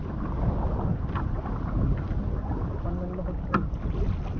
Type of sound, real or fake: real